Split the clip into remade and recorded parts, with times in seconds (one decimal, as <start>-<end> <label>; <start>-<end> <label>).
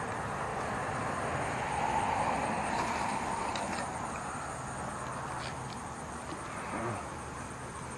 0.0-0.5 recorded; 0.5-4.1 remade; 4.1-8.0 recorded